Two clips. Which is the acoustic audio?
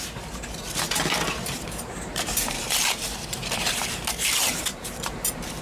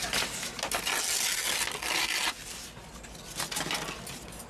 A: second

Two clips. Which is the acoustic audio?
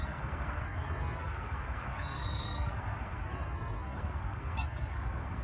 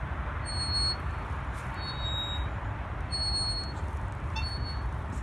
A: second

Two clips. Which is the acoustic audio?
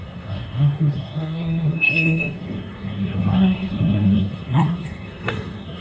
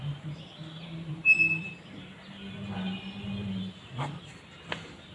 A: second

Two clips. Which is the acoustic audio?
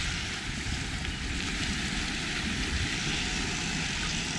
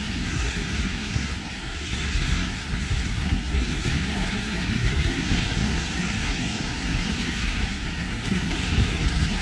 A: first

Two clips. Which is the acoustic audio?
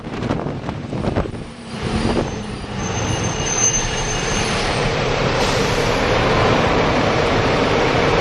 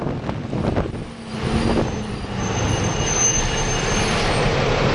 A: second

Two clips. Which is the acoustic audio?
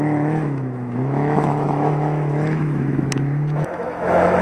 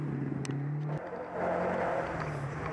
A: second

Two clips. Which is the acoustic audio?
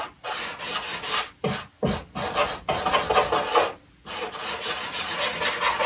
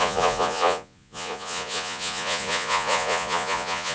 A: first